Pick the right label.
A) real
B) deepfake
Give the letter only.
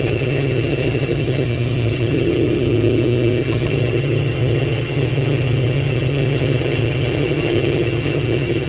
B